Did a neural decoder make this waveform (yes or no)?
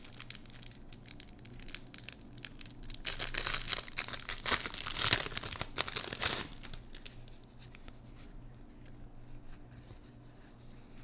no